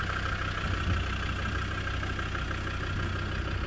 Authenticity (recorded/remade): recorded